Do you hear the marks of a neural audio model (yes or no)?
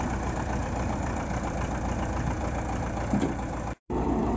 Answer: yes